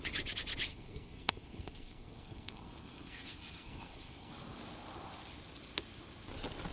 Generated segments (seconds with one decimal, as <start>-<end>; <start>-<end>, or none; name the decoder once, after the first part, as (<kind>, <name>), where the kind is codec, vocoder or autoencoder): 0.7-4.3 (codec, SNAC)